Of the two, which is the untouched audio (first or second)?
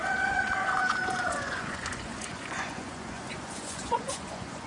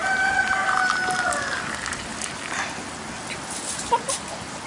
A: second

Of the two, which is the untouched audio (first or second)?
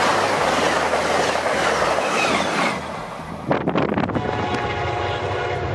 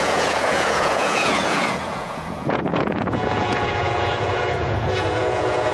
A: first